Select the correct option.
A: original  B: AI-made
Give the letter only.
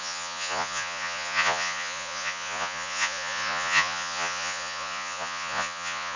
B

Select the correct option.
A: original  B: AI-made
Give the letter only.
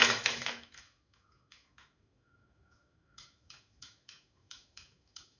B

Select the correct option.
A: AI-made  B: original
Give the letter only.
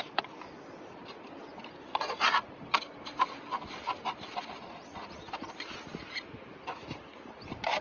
B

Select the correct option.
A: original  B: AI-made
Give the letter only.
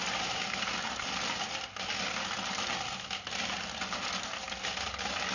A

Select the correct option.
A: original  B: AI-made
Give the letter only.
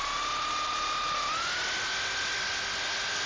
A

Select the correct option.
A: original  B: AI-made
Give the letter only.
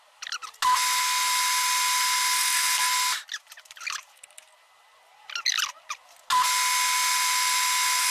A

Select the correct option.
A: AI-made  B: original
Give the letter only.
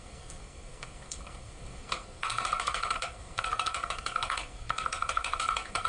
A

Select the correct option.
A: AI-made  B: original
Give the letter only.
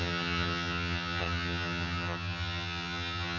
A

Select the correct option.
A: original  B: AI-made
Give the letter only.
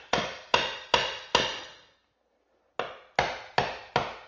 A